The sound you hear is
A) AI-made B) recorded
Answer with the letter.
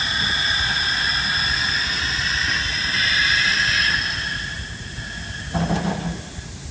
B